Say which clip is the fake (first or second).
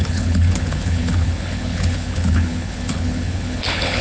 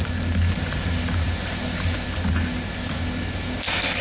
first